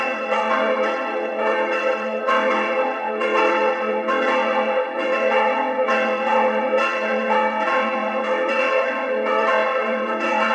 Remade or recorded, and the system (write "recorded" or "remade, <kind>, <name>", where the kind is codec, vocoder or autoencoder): remade, vocoder, WaveNeXt